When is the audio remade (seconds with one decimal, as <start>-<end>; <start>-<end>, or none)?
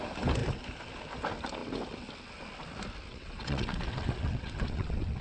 3.1-5.2